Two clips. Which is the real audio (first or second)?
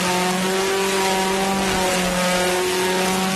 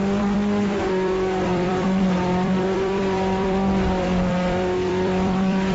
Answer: first